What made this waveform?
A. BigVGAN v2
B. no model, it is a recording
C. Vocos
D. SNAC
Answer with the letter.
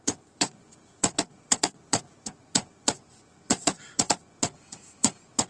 C